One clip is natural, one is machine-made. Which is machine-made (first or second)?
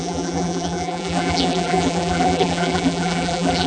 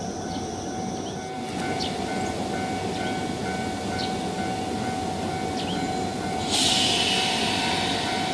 first